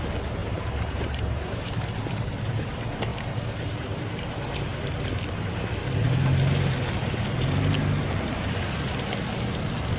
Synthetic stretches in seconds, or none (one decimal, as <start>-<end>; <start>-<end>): 0.4-1.8; 3.1-4.1

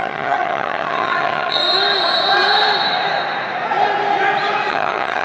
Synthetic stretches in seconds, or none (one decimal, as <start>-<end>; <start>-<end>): 0.0-1.6; 4.7-5.2

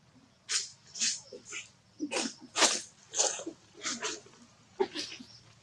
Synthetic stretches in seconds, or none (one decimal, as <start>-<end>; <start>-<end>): none